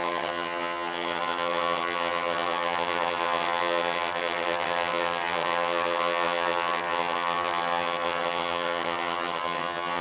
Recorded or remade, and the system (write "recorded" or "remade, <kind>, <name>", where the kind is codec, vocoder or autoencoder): remade, vocoder, HiFi-GAN